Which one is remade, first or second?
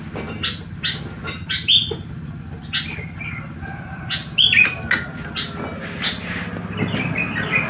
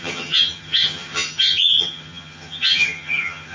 second